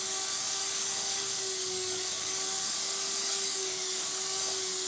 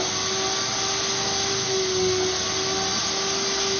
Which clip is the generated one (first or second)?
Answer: first